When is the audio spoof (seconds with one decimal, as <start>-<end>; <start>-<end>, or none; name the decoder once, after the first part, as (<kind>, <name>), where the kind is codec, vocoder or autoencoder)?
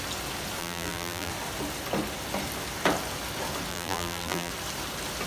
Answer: 0.6-1.3 (vocoder, BigVGAN v2); 3.7-4.5